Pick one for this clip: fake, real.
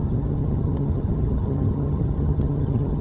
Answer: fake